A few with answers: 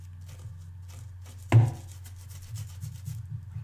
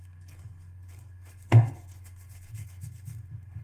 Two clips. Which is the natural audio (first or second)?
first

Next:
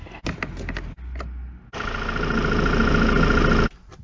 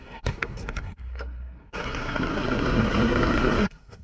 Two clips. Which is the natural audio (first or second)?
first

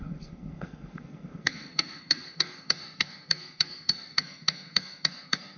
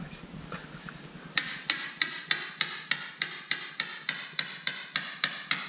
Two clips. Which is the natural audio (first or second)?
second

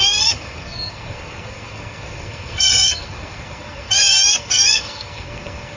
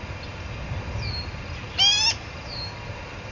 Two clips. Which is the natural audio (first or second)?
second